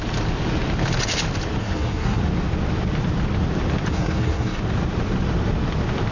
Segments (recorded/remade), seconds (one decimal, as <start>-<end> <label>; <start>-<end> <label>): 0.0-1.6 recorded; 1.6-2.2 remade; 2.2-3.9 recorded; 3.9-4.6 remade; 4.6-6.1 recorded